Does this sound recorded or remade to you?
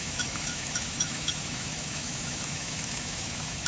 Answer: remade